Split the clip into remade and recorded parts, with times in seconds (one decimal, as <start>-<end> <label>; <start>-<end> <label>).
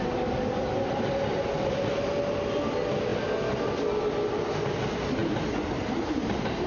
0.0-6.7 recorded